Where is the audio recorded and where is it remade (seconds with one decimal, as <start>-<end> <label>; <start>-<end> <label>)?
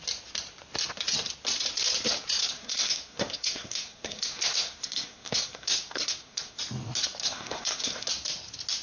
0.0-2.4 recorded; 2.4-6.6 remade; 6.6-7.2 recorded; 7.2-8.1 remade; 8.1-8.8 recorded